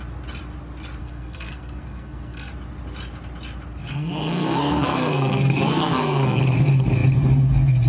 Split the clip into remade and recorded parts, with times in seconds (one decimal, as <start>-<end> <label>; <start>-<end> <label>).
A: 0.0-1.0 recorded; 1.0-2.5 remade; 2.5-3.9 recorded; 3.9-6.4 remade; 6.4-7.9 recorded